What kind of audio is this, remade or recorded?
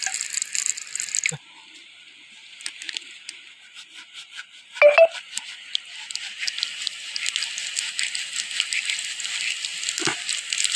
recorded